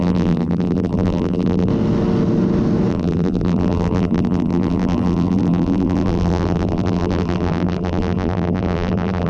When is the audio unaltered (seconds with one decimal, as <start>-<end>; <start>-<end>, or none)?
1.7-2.9